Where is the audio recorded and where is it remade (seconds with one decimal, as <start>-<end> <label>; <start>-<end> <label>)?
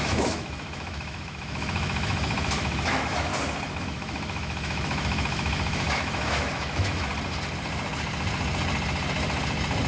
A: 0.0-3.3 remade; 3.3-3.8 recorded; 3.8-7.1 remade; 7.1-9.9 recorded